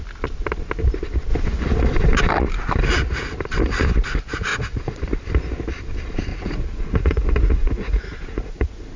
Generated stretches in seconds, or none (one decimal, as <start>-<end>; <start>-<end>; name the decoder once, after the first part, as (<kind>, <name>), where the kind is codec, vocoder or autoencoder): 4.5-5.0 (vocoder, Vocos); 6.3-9.0